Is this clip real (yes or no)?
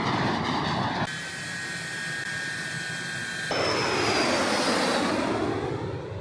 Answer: yes